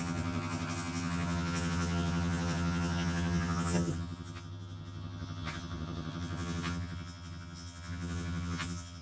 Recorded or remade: remade